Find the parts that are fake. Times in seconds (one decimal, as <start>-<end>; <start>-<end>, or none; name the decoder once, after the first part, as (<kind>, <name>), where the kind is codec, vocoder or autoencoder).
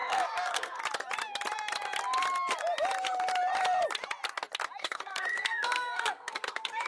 0.0-0.8 (codec, SNAC); 4.8-6.9